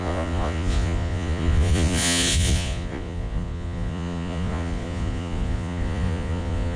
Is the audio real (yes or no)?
no